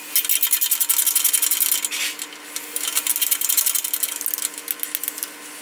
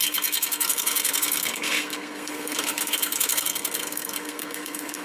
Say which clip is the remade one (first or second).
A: second